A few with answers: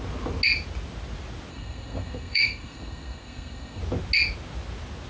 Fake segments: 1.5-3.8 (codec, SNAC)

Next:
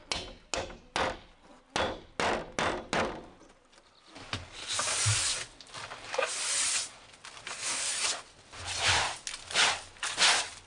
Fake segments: none

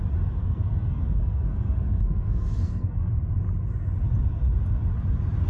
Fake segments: 0.4-3.1 (codec, SNAC)

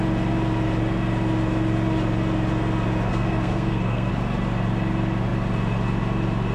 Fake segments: 3.1-4.1 (codec, SNAC)